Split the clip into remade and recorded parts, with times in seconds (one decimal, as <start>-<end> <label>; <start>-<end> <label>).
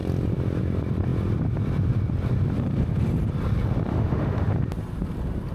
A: 0.0-3.9 recorded; 3.9-4.5 remade; 4.5-5.5 recorded